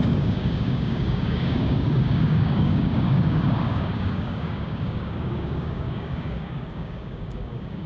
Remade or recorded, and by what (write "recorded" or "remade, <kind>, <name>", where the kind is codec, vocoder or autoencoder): remade, codec, DAC